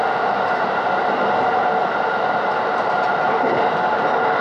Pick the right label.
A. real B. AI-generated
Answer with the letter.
A